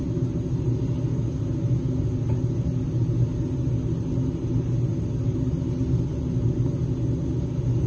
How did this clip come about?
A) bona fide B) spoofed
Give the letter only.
A